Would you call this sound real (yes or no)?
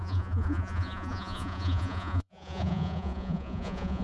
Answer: no